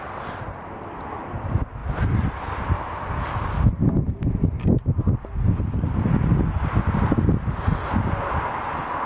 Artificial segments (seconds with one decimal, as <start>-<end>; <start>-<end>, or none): none